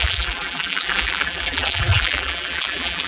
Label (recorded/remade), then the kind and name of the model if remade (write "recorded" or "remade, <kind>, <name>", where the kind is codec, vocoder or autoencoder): remade, vocoder, BigVGAN v2